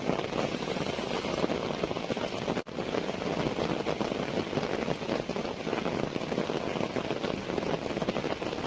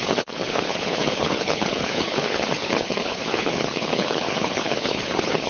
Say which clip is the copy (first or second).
second